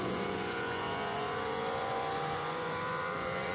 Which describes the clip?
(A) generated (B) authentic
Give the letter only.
A